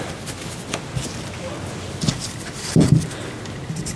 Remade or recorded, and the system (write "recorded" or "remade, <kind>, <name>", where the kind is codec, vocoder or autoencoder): recorded